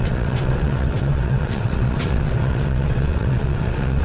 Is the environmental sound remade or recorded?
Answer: remade